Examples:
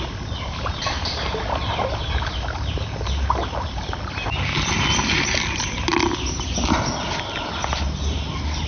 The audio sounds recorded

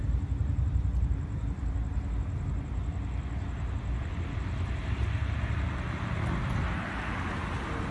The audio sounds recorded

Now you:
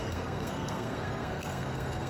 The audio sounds remade